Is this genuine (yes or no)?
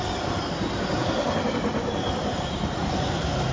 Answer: yes